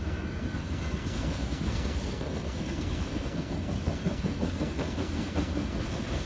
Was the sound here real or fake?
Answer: fake